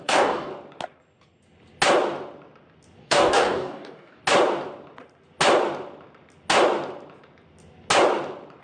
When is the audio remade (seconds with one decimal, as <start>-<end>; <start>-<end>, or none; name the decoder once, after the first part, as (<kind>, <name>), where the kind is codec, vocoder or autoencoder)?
0.0-0.5 (codec, DAC); 3.0-4.2